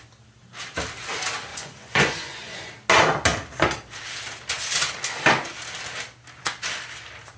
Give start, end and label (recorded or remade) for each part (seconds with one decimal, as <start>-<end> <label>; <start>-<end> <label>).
0.0-1.5 recorded; 1.5-2.7 remade; 2.7-7.4 recorded

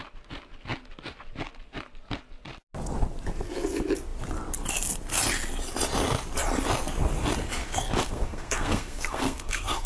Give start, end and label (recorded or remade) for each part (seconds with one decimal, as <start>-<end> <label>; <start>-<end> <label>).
0.0-7.6 recorded; 7.6-9.9 remade

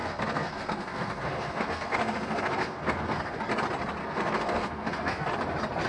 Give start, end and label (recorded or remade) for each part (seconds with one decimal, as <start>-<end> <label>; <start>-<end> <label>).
0.0-3.4 remade; 3.4-4.0 recorded; 4.0-5.3 remade; 5.3-5.9 recorded

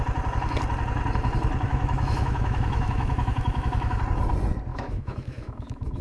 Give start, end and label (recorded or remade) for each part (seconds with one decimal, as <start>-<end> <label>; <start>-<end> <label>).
0.0-1.7 recorded; 1.7-4.0 remade; 4.0-4.7 recorded; 4.7-6.0 remade

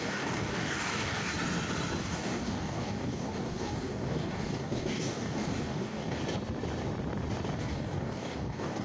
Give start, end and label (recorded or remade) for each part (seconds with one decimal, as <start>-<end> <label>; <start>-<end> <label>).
0.0-1.3 remade; 1.3-2.0 recorded; 2.0-6.2 remade; 6.2-7.6 recorded; 7.6-8.8 remade

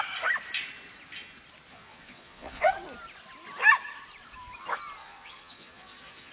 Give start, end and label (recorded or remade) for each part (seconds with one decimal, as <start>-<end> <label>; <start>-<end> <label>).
0.0-1.7 recorded; 1.7-2.7 remade; 2.7-5.0 recorded; 5.0-6.3 remade

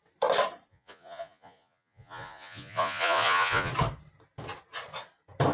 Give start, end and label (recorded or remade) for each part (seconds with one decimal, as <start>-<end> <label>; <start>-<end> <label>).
0.0-0.7 recorded; 0.7-3.7 remade; 3.7-5.5 recorded

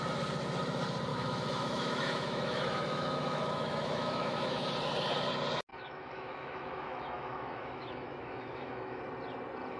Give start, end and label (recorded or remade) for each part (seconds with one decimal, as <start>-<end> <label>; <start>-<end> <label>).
0.0-1.1 recorded; 1.1-4.7 remade; 4.7-5.7 recorded; 5.7-9.0 remade; 9.0-9.8 recorded